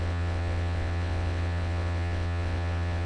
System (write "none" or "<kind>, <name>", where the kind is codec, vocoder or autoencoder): vocoder, WaveNeXt